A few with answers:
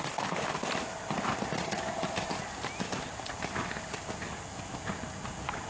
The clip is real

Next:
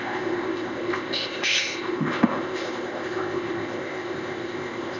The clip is fake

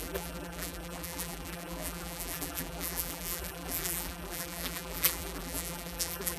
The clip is fake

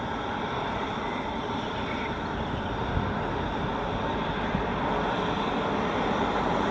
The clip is fake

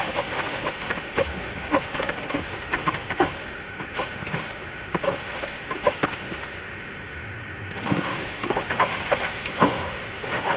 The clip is fake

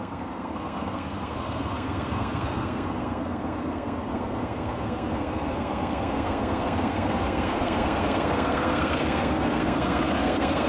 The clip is fake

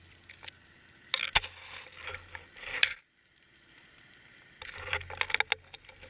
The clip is real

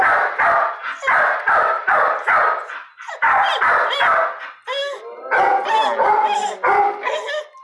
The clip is real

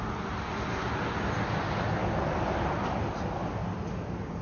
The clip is real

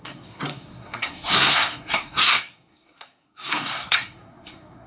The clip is fake